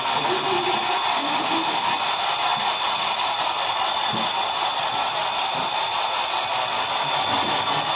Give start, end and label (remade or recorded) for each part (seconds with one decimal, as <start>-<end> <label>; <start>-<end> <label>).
0.0-1.1 recorded; 1.1-1.9 remade; 1.9-8.0 recorded